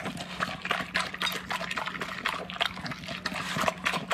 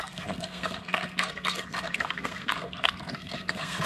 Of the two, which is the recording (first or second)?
first